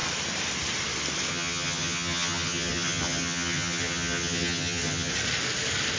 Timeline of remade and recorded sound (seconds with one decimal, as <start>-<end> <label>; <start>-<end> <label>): 0.0-1.3 recorded; 1.3-5.1 remade; 5.1-6.0 recorded